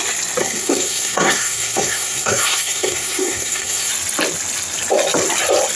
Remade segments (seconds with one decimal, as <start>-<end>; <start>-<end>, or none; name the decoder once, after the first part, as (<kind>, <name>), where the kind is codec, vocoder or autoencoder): 0.4-3.9 (codec, SNAC)